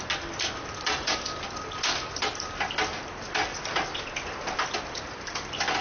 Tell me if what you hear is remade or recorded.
recorded